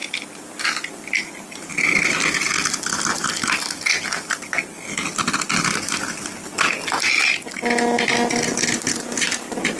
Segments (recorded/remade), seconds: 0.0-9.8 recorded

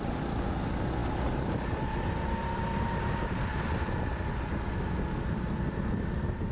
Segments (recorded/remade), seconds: 0.0-6.5 recorded

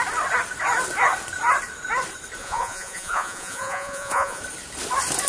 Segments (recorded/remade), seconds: 0.0-2.4 recorded; 2.4-4.4 remade; 4.4-5.3 recorded

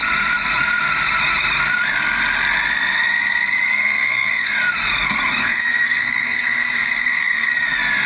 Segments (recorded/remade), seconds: 0.0-3.8 recorded; 3.8-4.5 remade; 4.5-5.4 recorded; 5.4-7.5 remade; 7.5-8.1 recorded

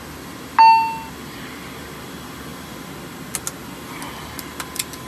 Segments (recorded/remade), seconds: 0.0-5.1 recorded